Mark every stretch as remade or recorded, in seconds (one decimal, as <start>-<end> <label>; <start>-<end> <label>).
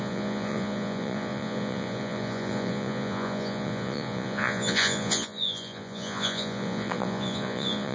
0.0-7.9 remade